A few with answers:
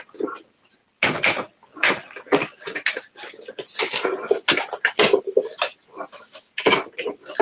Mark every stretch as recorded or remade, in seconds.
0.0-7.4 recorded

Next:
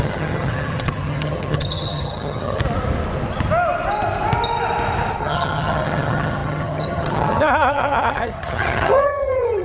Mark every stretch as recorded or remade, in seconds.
0.0-2.6 remade; 2.6-5.2 recorded; 5.2-9.6 remade

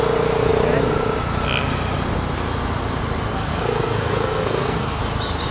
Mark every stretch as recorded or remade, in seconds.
0.0-3.3 recorded; 3.3-5.0 remade; 5.0-5.5 recorded

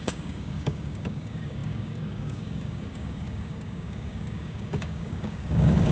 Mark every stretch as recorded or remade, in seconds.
0.0-5.9 remade

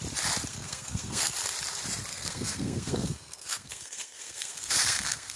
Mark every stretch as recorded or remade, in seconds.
0.0-0.5 recorded; 0.5-1.3 remade; 1.3-2.1 recorded; 2.1-5.4 remade

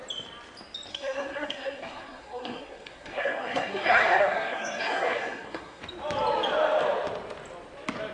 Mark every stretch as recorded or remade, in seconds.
0.0-0.9 recorded; 0.9-5.8 remade; 5.8-8.1 recorded

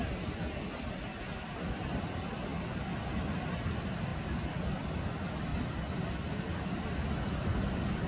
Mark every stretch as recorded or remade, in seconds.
0.0-4.1 recorded; 4.1-4.9 remade; 4.9-8.1 recorded